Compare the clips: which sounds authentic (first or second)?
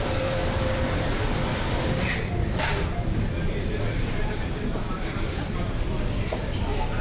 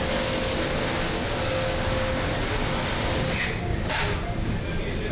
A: second